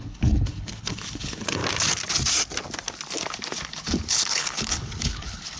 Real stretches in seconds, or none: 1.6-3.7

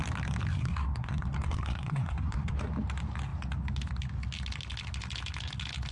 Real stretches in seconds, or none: 0.0-0.5; 2.6-5.9

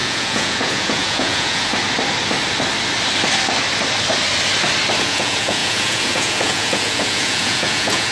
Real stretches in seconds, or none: 1.7-5.0

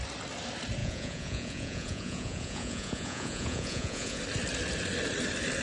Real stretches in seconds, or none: 0.0-0.8; 4.2-5.6